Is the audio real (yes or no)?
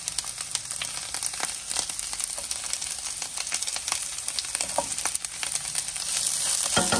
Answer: yes